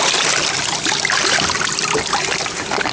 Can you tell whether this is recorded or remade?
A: recorded